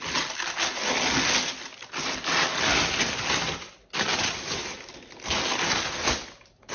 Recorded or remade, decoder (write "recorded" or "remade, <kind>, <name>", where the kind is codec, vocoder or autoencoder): recorded